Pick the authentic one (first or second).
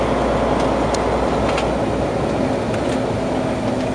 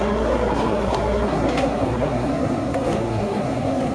first